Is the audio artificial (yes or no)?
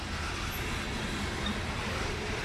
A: no